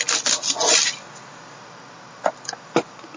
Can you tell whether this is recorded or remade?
recorded